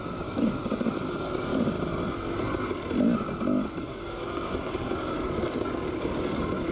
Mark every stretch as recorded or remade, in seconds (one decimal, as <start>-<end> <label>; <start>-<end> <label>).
0.0-0.6 remade; 0.6-1.1 recorded; 1.1-1.5 remade; 1.5-3.8 recorded; 3.8-6.7 remade